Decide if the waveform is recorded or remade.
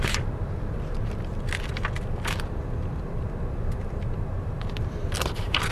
remade